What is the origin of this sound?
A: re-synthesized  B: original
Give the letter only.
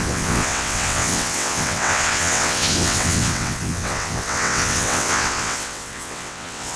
A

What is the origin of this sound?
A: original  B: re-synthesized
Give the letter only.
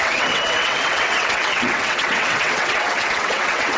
B